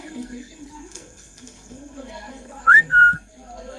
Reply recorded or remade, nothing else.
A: remade